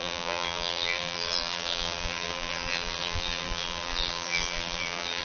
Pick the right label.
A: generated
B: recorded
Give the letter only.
A